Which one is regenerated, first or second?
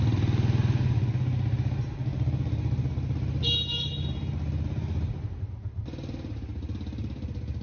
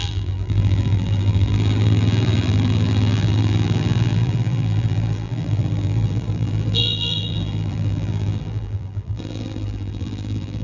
second